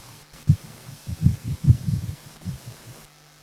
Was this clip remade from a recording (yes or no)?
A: yes